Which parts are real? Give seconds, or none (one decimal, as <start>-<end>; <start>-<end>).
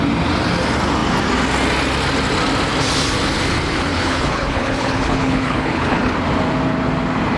0.0-3.9; 6.1-7.4